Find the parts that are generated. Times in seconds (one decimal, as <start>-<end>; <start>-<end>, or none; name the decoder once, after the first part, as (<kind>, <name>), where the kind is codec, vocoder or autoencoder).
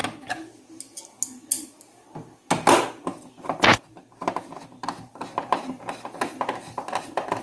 none